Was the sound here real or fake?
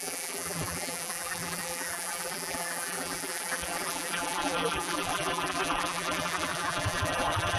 fake